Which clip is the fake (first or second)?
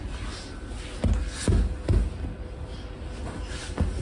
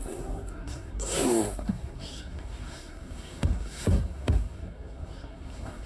second